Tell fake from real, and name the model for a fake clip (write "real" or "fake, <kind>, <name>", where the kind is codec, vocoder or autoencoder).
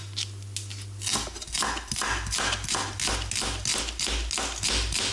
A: real